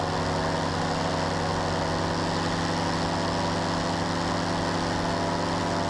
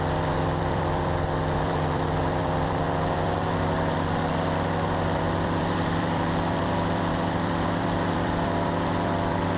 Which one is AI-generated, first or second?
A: second